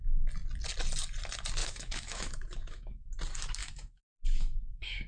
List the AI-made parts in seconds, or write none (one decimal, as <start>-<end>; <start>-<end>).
1.6-3.2; 3.6-5.1